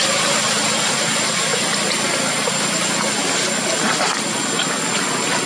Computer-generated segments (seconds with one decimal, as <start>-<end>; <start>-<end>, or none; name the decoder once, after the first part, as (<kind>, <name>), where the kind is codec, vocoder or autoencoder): none